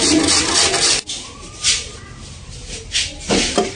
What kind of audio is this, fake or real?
real